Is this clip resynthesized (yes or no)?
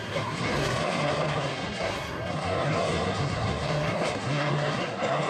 yes